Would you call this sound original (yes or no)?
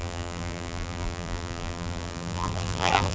no